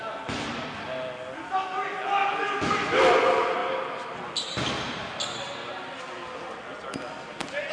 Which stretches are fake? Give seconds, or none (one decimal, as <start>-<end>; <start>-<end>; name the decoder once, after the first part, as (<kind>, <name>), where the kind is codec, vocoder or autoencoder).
none